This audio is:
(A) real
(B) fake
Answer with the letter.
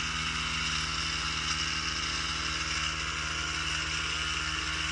A